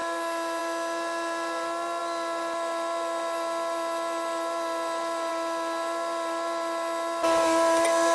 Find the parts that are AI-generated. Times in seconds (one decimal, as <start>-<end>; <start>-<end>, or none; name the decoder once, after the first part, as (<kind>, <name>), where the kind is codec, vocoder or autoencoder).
none